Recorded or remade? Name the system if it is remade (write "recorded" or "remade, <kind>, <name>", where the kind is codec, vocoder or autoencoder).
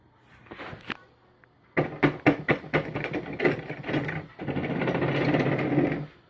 recorded